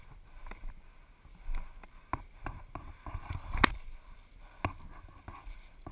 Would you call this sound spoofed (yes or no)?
no